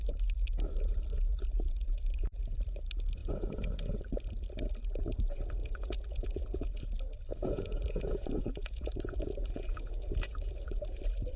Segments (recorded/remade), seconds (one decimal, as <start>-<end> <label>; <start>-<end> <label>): 0.0-3.2 recorded; 3.2-4.0 remade; 4.0-5.6 recorded; 5.6-6.8 remade; 6.8-7.3 recorded; 7.3-11.0 remade; 11.0-11.4 recorded